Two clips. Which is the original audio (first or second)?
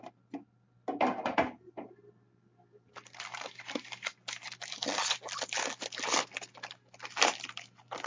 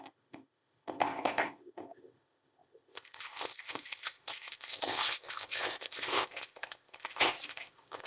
first